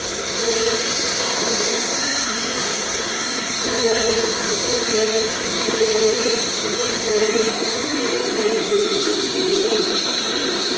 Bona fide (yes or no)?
no